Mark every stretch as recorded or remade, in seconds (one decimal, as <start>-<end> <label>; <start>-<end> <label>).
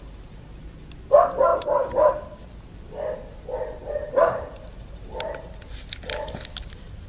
0.0-3.8 recorded; 3.8-5.5 remade; 5.5-7.1 recorded